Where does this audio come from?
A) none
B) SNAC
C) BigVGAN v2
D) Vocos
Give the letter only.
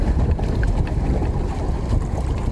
A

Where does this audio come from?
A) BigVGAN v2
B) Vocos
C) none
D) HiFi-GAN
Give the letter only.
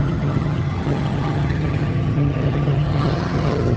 D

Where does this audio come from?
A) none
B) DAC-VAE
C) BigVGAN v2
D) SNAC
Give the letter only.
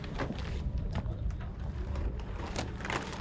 C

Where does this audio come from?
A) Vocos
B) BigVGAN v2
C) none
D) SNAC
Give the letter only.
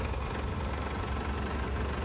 C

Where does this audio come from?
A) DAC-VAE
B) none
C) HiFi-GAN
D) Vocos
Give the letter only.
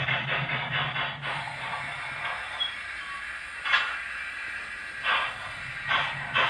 B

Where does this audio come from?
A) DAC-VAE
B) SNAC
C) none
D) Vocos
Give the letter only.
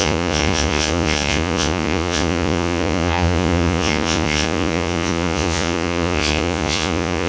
D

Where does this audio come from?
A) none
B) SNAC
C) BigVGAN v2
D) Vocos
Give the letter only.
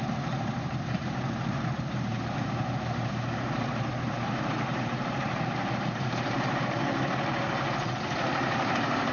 C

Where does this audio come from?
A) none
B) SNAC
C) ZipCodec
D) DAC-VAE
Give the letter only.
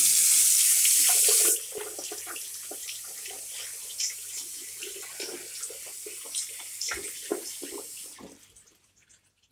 A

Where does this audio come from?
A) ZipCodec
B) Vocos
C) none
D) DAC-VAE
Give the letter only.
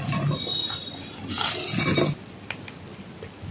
C